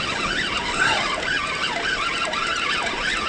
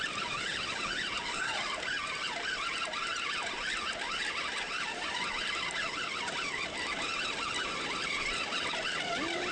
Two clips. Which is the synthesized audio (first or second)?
second